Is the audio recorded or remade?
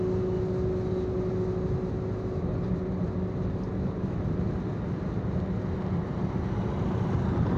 recorded